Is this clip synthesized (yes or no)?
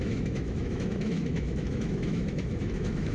yes